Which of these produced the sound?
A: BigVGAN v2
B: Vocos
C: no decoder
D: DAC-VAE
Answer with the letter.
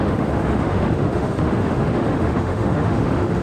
D